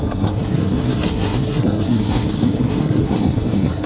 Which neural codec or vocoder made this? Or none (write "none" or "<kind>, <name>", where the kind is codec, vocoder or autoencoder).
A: codec, SNAC